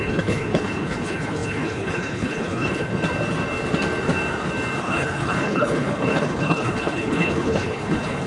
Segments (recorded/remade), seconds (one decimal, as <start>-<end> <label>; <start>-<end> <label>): 0.0-2.9 remade; 2.9-4.8 recorded; 4.8-8.3 remade

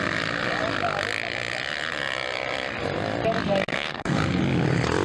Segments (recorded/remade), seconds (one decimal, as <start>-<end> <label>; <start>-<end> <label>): 0.0-3.7 recorded; 3.7-4.4 remade; 4.4-5.0 recorded

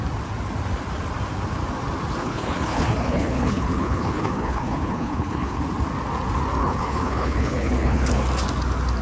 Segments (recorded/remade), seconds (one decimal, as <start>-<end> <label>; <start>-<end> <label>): 0.0-2.2 recorded; 2.2-5.6 remade; 5.6-6.6 recorded; 6.6-8.1 remade; 8.1-9.0 recorded

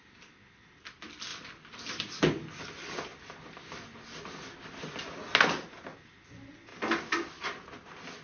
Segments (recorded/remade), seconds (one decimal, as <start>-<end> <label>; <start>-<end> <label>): 0.0-8.2 recorded